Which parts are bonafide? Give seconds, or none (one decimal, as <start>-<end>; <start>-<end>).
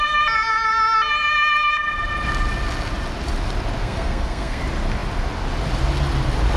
0.0-3.8; 4.6-6.6